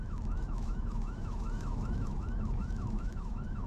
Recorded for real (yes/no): no